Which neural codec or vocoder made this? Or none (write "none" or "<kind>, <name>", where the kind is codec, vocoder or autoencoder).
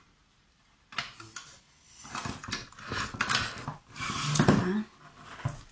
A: none